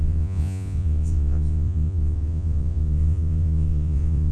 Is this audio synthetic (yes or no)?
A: yes